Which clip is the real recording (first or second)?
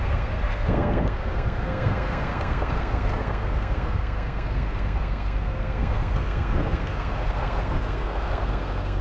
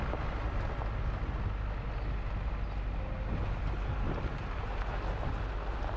second